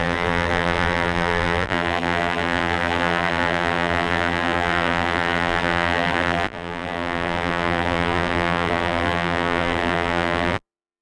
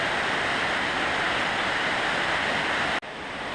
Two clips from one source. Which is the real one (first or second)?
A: second